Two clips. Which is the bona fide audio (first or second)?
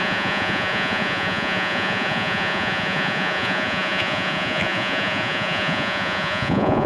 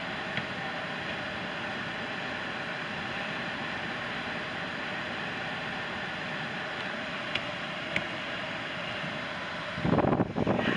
second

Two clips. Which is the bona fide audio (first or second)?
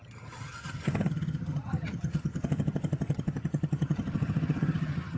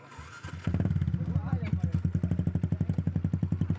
second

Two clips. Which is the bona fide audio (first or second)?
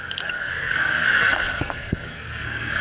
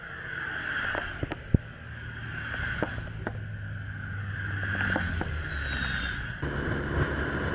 second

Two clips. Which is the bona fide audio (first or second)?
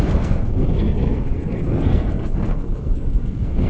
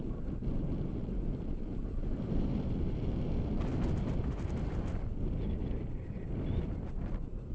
second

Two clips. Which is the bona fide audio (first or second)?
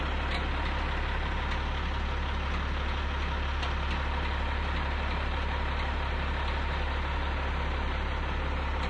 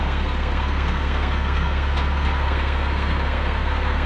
first